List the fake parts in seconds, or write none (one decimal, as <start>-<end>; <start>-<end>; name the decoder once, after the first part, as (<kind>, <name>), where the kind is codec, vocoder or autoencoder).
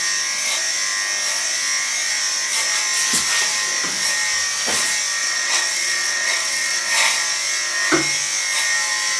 5.2-6.8 (vocoder, WaveNeXt)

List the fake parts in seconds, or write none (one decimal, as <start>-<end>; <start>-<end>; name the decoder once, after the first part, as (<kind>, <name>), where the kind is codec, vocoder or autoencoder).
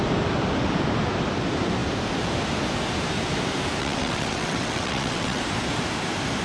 3.8-5.4 (vocoder, WaveNeXt)